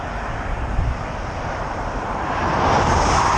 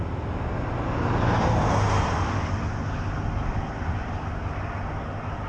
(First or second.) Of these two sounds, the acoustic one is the second